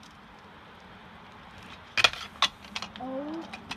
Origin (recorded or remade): recorded